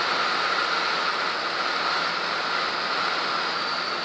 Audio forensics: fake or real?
real